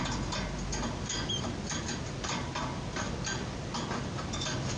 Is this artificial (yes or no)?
no